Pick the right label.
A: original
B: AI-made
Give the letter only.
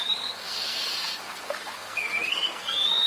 B